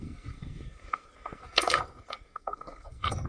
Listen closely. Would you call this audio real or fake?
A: fake